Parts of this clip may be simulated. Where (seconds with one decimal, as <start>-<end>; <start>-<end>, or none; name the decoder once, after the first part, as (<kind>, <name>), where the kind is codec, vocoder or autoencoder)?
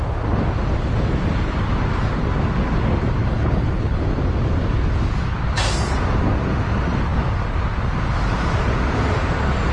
3.2-4.1 (codec, HILCodec)